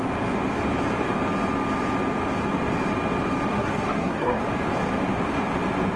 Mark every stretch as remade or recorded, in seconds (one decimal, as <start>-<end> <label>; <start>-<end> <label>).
0.0-3.5 recorded; 3.5-4.4 remade; 4.4-6.0 recorded